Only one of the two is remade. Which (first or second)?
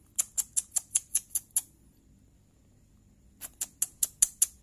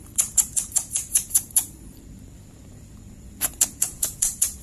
second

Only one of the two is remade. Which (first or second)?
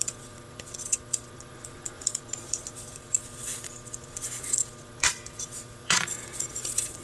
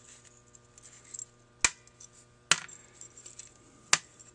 first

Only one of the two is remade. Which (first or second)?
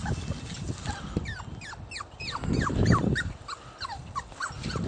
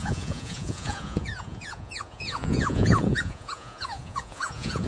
second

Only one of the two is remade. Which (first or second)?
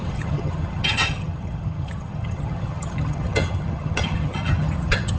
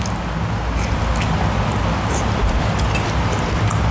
first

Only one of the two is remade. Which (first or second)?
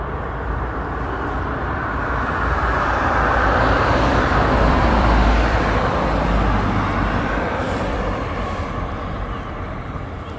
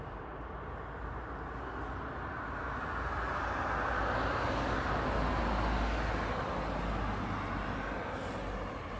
first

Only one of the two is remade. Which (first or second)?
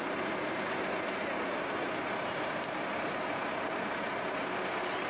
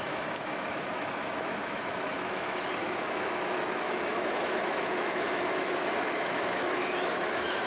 second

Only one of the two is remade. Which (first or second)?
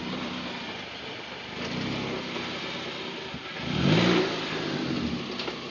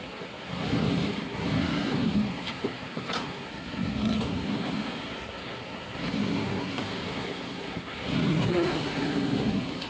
second